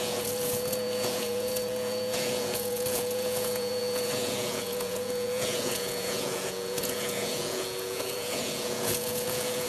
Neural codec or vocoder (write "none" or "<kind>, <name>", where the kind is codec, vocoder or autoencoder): vocoder, Vocos